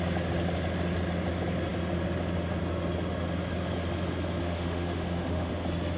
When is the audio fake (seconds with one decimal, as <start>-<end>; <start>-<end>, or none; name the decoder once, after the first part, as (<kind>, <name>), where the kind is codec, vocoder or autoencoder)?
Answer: 4.4-5.5 (autoencoder, DAC-VAE)